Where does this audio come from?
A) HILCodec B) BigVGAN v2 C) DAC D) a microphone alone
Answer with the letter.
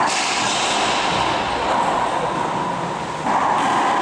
D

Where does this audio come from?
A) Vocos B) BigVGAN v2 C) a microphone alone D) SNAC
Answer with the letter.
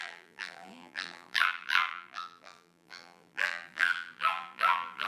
B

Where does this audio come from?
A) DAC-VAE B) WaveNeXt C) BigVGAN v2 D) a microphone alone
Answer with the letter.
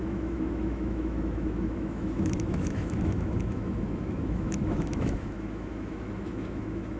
A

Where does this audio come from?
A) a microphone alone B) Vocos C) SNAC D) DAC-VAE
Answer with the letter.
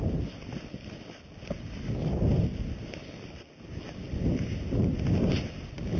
A